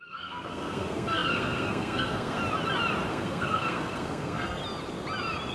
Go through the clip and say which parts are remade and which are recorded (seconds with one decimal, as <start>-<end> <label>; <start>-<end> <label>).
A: 0.0-2.4 remade; 2.4-3.1 recorded; 3.1-4.6 remade; 4.6-5.5 recorded